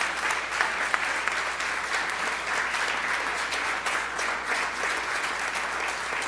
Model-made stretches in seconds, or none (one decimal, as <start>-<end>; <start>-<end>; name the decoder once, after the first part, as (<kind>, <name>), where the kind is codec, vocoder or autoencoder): 3.3-5.3 (vocoder, Vocos)